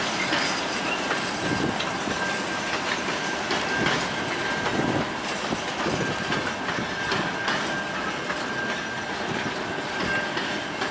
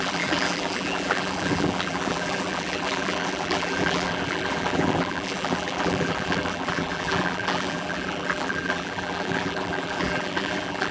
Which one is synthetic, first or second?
second